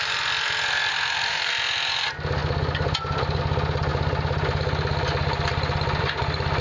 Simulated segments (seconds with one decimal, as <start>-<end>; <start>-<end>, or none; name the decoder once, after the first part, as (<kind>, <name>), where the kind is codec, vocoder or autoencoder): 0.9-1.5 (codec, SNAC)